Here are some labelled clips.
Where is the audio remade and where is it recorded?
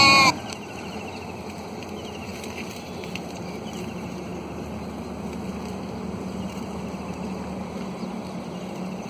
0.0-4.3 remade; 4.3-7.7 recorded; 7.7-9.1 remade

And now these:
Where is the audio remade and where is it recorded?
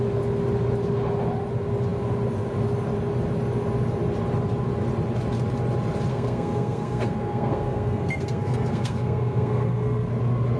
0.0-6.1 recorded; 6.1-10.1 remade; 10.1-10.6 recorded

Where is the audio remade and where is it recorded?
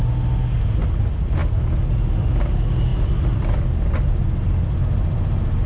0.0-5.7 recorded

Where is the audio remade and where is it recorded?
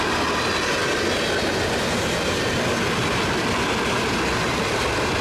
0.0-5.2 recorded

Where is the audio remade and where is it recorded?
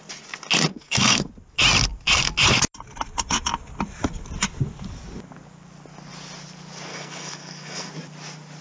0.0-0.7 recorded; 0.7-1.3 remade; 1.3-6.9 recorded; 6.9-7.9 remade; 7.9-8.6 recorded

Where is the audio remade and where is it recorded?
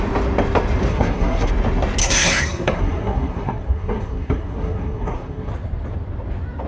0.0-0.9 recorded; 0.9-1.5 remade; 1.5-2.0 recorded; 2.0-5.5 remade; 5.5-6.7 recorded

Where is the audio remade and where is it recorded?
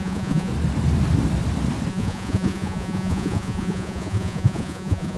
0.0-0.5 remade; 0.5-1.9 recorded; 1.9-5.2 remade